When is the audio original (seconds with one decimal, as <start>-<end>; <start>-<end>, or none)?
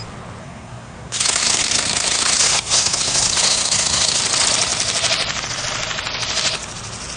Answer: 0.0-0.4; 4.2-7.2